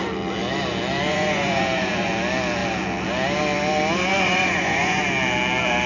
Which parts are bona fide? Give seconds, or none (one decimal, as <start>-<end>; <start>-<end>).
0.0-1.1; 2.1-4.1; 5.0-5.9